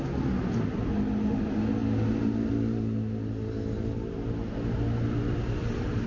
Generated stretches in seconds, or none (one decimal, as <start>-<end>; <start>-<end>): none